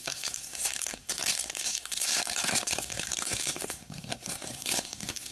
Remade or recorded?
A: remade